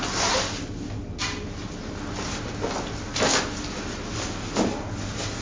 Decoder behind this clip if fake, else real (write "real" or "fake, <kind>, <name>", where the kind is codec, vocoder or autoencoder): real